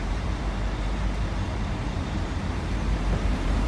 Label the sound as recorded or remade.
remade